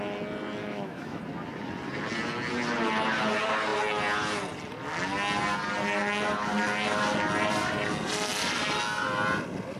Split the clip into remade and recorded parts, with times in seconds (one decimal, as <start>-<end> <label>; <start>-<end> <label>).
0.0-0.6 recorded; 0.6-1.2 remade; 1.2-9.8 recorded